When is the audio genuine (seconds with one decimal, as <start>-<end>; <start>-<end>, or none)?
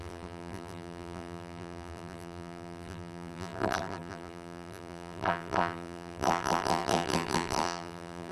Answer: none